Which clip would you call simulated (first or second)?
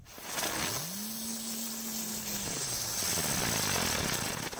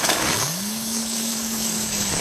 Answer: second